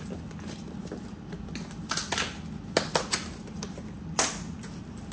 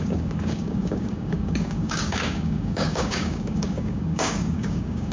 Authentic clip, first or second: first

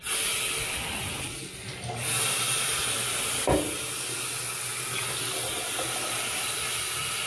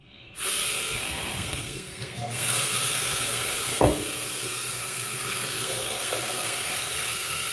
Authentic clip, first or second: first